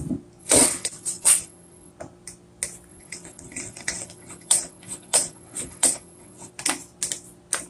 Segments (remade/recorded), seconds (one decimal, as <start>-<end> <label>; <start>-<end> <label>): 0.0-0.4 recorded; 0.4-1.9 remade; 1.9-2.9 recorded; 2.9-6.5 remade; 6.5-7.7 recorded